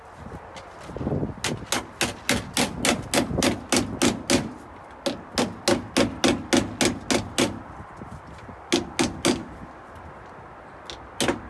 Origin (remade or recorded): recorded